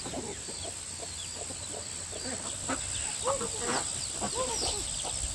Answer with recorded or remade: recorded